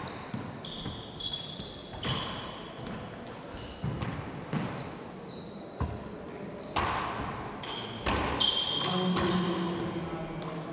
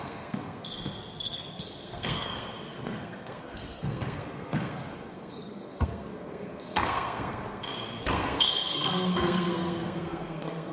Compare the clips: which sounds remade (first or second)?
second